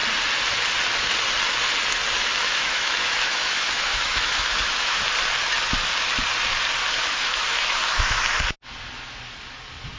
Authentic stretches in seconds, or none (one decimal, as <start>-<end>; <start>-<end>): 0.0-2.4; 5.0-6.8; 8.4-10.0